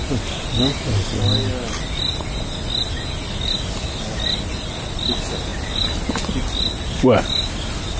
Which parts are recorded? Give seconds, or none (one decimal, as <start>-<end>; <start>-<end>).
0.0-8.0